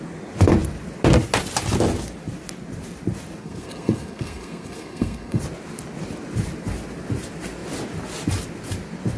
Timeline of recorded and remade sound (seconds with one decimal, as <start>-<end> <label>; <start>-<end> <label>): 0.0-3.4 recorded; 3.4-5.4 remade; 5.4-9.2 recorded